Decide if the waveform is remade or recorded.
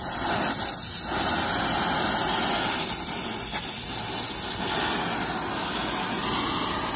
recorded